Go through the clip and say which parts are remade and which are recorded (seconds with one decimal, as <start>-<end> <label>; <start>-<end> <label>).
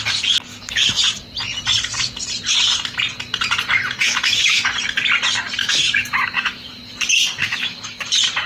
0.0-0.5 recorded; 0.5-1.0 remade; 1.0-4.0 recorded; 4.0-4.7 remade; 4.7-5.6 recorded; 5.6-6.9 remade; 6.9-7.4 recorded; 7.4-8.0 remade; 8.0-8.5 recorded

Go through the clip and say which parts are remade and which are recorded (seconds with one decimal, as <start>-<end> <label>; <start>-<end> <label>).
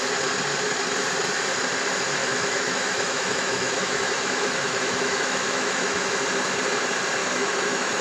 0.0-2.2 recorded; 2.2-6.2 remade; 6.2-7.2 recorded; 7.2-8.0 remade